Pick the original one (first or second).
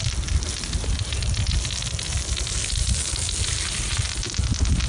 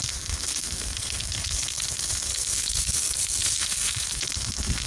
first